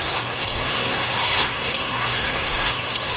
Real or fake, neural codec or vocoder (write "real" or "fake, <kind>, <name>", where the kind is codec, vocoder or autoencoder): fake, codec, SNAC